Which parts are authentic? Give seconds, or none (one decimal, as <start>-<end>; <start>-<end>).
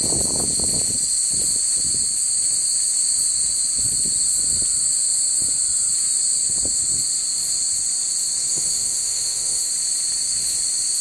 0.0-8.5; 9.7-11.0